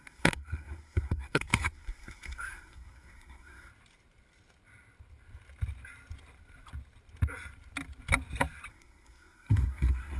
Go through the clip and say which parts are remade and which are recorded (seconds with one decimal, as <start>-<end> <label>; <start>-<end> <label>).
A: 0.0-3.7 remade; 3.7-8.7 recorded; 8.7-10.2 remade